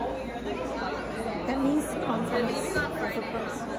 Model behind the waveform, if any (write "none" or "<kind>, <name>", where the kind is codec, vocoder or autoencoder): none